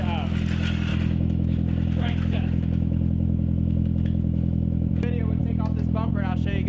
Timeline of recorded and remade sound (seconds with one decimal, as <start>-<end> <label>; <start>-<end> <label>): 0.0-0.9 recorded; 0.9-4.9 remade; 4.9-6.7 recorded

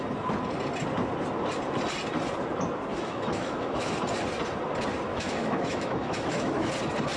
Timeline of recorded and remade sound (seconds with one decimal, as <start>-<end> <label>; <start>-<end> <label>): 0.0-2.9 recorded; 2.9-3.9 remade; 3.9-5.1 recorded; 5.1-6.7 remade; 6.7-7.2 recorded

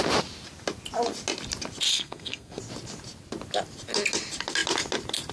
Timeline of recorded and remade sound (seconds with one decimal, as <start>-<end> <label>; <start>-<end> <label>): 0.0-1.9 recorded; 1.9-2.6 remade; 2.6-5.3 recorded

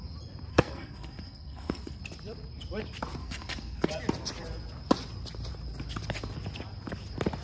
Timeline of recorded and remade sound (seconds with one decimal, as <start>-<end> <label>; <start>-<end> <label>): 0.0-0.5 recorded; 0.5-2.0 remade; 2.0-3.2 recorded; 3.2-3.9 remade; 3.9-7.4 recorded

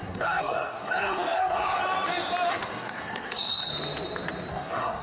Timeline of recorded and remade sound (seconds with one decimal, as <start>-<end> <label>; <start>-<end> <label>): 0.0-1.8 remade; 1.8-2.5 recorded; 2.5-3.7 remade; 3.7-4.5 recorded; 4.5-5.0 remade

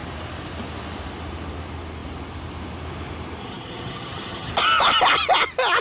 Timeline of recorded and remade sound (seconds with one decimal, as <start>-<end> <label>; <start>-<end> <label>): 0.0-3.4 recorded; 3.4-4.5 remade; 4.5-5.8 recorded

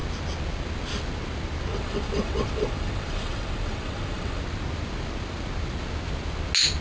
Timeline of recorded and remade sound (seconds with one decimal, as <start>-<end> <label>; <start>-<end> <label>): 0.0-1.7 recorded; 1.7-4.4 remade; 4.4-6.8 recorded